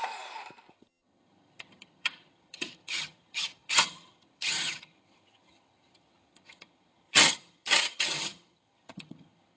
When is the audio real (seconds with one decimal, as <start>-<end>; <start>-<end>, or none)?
0.0-0.7